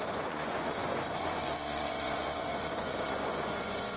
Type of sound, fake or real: fake